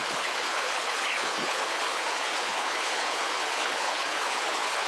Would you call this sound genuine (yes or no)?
no